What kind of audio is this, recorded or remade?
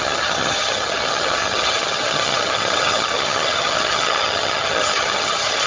remade